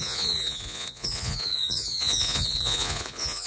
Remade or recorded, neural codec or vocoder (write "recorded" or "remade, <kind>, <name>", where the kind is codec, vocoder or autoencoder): remade, vocoder, Vocos